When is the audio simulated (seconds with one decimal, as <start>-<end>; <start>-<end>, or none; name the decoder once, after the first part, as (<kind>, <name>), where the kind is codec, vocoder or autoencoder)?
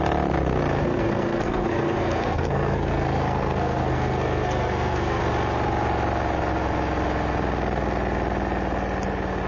0.8-5.2 (codec, SNAC)